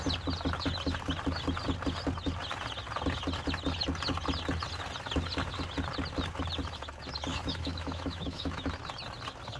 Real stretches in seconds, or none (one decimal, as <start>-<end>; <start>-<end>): 0.0-7.3; 8.7-9.6